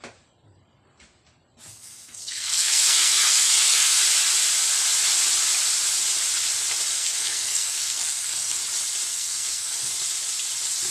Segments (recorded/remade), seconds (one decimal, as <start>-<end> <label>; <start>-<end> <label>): 0.0-1.7 recorded; 1.7-4.0 remade; 4.0-6.9 recorded; 6.9-8.6 remade; 8.6-9.1 recorded; 9.1-9.9 remade; 9.9-10.9 recorded